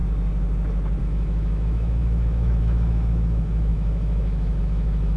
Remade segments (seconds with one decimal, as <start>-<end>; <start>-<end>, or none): 1.0-5.2